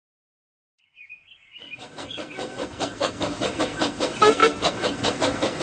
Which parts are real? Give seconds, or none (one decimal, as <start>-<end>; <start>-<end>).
none

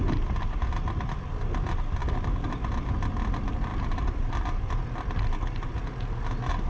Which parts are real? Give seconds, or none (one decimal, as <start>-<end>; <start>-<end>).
0.0-6.7